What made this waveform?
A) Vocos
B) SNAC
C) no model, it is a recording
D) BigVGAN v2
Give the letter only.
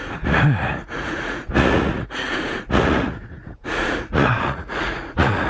A